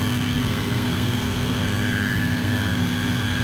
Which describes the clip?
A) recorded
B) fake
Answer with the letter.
B